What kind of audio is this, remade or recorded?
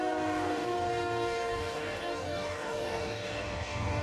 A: remade